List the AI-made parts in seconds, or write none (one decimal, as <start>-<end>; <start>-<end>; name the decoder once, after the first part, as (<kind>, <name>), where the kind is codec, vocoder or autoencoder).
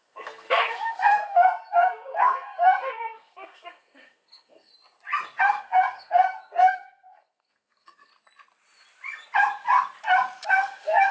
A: 0.0-4.7 (codec, SNAC); 5.5-8.1; 10.5-11.1